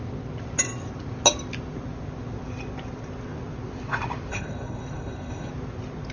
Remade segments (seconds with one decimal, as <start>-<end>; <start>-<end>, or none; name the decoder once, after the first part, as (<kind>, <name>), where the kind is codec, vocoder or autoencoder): 4.3-5.5 (codec, HILCodec)